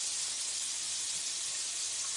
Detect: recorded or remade recorded